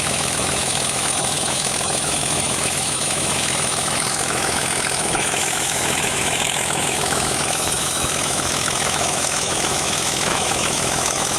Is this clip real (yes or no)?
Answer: no